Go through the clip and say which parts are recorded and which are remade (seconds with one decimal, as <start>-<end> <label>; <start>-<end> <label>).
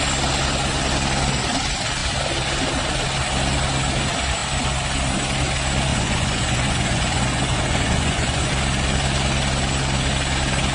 0.0-5.9 recorded; 5.9-8.5 remade; 8.5-10.7 recorded